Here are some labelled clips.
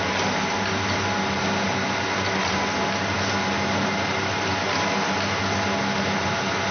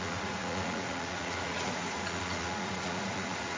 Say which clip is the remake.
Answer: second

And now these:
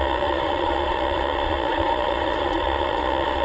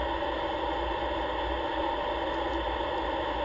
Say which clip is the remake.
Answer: first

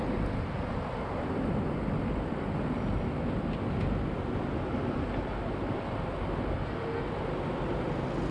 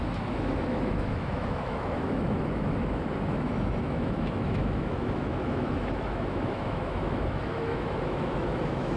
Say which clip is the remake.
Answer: second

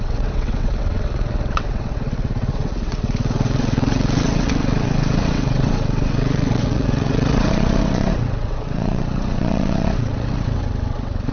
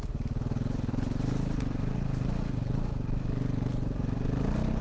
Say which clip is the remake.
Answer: first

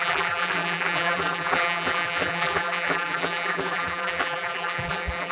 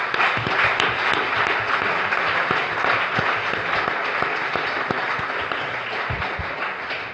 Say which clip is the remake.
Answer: first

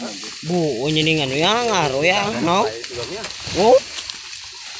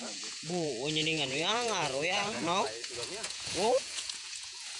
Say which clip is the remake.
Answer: second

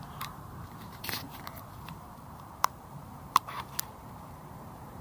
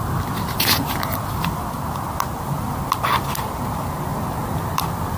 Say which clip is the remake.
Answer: first